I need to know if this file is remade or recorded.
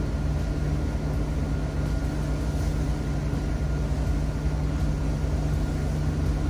recorded